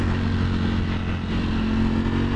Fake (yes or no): no